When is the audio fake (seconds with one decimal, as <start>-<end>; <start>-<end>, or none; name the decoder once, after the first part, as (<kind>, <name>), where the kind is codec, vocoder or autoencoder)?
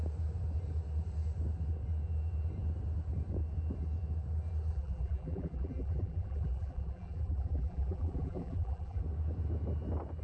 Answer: 4.7-9.0 (vocoder, BigVGAN v2)